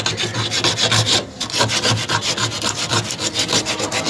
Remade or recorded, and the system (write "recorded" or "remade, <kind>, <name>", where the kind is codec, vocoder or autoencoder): recorded